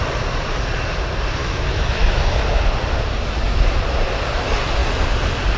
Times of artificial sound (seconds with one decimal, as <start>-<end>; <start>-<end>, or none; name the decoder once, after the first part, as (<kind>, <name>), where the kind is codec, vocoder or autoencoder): 1.4-2.4 (autoencoder, DAC-VAE)